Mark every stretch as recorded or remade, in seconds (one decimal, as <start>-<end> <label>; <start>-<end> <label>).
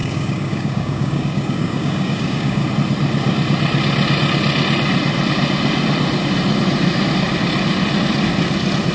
0.0-2.7 remade; 2.7-8.9 recorded